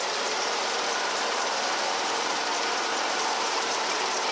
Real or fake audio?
fake